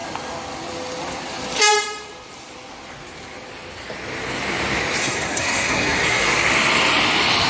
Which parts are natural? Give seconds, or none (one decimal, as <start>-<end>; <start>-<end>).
0.0-5.0; 6.3-7.5